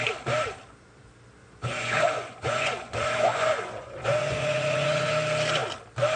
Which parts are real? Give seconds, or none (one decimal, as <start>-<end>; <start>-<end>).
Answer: 0.0-1.4; 5.1-6.2